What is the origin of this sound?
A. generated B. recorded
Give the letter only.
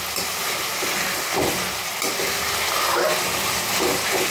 B